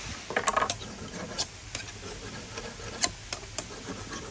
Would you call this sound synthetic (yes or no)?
no